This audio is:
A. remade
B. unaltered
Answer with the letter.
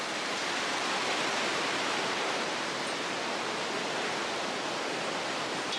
B